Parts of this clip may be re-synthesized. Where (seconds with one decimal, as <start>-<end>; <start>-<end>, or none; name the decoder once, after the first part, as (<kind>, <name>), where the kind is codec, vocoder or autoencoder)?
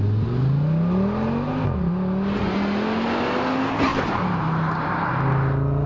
3.9-5.1 (vocoder, BigVGAN v2)